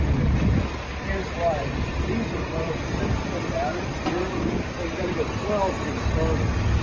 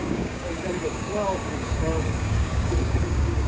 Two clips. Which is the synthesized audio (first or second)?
second